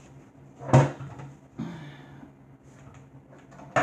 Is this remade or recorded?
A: recorded